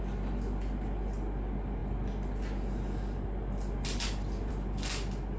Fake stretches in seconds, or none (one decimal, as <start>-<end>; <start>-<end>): none

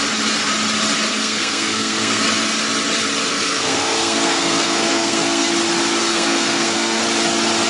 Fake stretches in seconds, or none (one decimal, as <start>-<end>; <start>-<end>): 1.2-2.2; 3.3-5.5; 6.0-7.0